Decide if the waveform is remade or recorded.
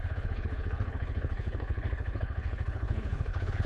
remade